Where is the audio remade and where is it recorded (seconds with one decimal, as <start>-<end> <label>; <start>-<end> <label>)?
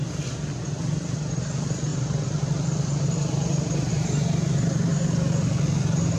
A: 0.0-6.2 recorded